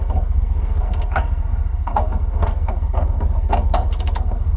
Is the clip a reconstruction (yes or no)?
yes